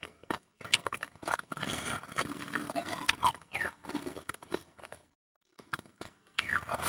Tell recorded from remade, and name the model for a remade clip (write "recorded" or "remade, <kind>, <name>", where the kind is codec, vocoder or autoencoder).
remade, codec, SNAC